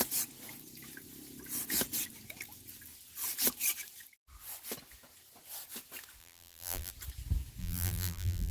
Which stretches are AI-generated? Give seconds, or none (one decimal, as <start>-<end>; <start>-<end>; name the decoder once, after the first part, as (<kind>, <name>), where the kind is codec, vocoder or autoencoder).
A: 6.2-6.9 (vocoder, BigVGAN v2); 7.6-8.5